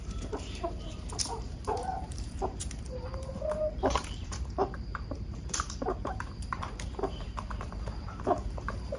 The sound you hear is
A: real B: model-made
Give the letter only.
B